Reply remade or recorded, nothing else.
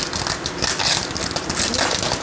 recorded